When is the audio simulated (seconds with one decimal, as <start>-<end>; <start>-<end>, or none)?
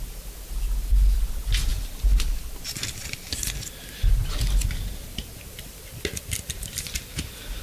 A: none